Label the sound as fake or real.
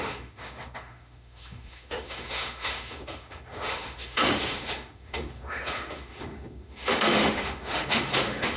fake